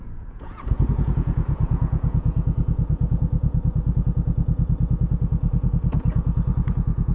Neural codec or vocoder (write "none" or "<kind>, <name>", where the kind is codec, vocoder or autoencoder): vocoder, Vocos